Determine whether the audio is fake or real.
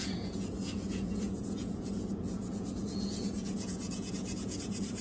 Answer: fake